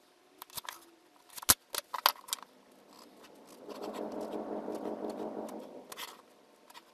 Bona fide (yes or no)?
yes